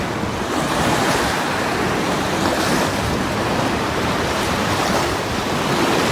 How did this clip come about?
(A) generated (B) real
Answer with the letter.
B